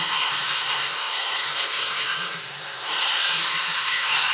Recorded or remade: remade